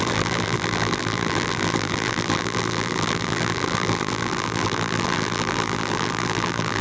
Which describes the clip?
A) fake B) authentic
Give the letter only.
A